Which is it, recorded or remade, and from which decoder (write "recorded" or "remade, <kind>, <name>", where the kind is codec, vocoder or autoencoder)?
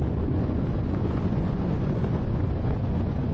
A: remade, vocoder, Vocos